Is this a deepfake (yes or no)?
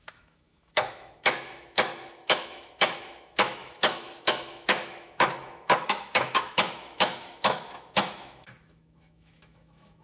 yes